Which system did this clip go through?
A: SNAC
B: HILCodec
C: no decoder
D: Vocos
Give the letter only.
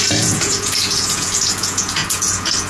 D